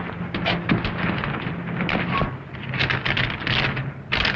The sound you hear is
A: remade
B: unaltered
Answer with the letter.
B